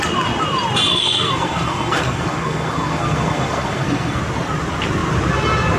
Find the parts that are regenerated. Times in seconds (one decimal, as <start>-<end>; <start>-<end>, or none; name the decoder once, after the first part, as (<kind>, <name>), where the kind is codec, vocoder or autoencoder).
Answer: 0.9-4.2 (codec, SNAC)